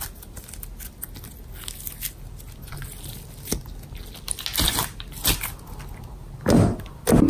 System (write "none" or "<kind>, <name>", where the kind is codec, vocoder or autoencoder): none